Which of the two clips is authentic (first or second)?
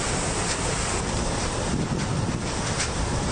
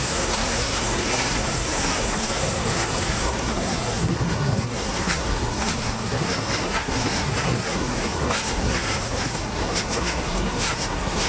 first